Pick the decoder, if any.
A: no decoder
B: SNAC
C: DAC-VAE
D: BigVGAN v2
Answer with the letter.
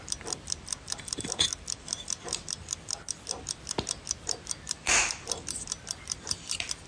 D